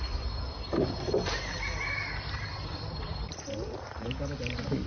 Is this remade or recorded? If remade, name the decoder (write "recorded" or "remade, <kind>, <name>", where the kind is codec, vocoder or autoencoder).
recorded